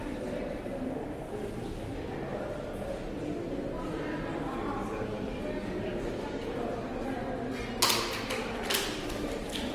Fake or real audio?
real